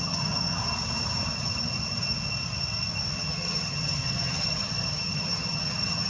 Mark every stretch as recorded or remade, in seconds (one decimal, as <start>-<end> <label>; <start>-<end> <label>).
0.0-0.6 remade; 0.6-3.1 recorded; 3.1-6.1 remade